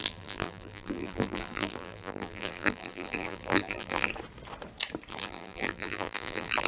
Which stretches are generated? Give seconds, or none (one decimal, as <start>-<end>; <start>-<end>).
0.0-4.1; 5.1-6.7